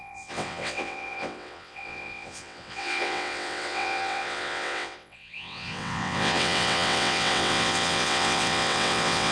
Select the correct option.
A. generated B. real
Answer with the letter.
A